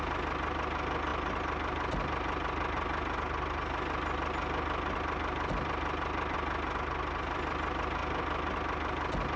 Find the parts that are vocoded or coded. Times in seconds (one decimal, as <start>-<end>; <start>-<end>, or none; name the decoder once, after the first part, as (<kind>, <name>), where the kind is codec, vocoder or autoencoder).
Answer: none